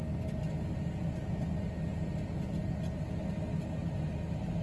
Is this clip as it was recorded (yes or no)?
yes